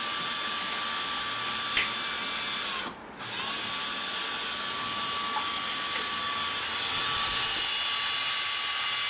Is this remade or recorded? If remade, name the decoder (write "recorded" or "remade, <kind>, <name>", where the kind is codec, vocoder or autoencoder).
recorded